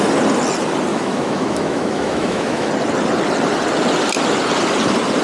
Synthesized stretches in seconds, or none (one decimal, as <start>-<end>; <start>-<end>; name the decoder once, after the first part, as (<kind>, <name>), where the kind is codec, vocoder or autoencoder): 0.9-2.7 (autoencoder, DAC-VAE)